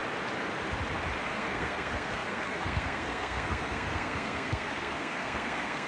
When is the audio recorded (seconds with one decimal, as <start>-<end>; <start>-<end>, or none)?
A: 0.0-1.2